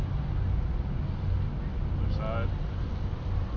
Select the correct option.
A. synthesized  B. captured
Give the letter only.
B